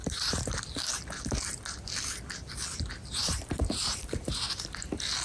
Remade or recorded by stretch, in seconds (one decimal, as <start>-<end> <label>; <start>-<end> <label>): 0.0-0.6 remade; 0.6-3.0 recorded; 3.0-4.8 remade; 4.8-5.2 recorded